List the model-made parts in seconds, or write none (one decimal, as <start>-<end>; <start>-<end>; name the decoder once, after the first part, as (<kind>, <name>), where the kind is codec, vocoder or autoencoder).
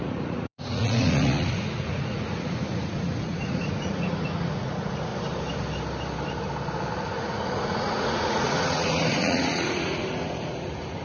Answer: 0.0-5.1 (vocoder, Vocos); 7.0-11.0